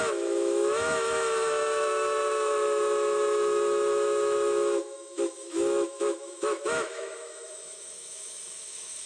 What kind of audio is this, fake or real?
fake